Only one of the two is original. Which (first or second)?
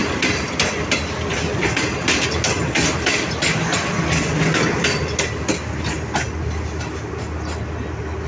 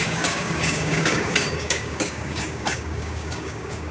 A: first